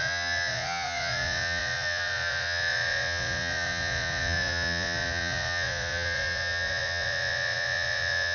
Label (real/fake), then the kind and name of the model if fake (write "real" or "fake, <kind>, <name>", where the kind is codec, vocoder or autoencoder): fake, vocoder, Vocos